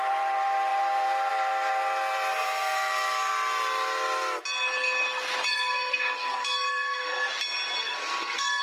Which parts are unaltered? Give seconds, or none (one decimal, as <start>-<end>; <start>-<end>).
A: 0.0-2.3; 3.3-5.5; 7.3-7.8